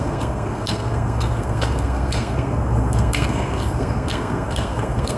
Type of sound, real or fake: fake